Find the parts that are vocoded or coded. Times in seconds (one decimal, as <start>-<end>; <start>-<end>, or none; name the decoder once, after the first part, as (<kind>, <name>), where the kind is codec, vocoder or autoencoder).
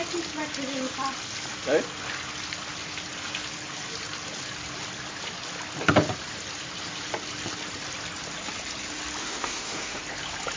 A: 9.2-10.0 (autoencoder, DAC-VAE)